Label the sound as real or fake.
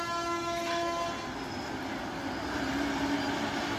real